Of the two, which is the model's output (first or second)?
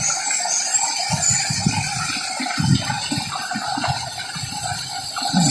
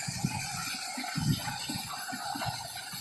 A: second